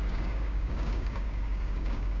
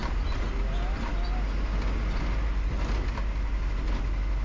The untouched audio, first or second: second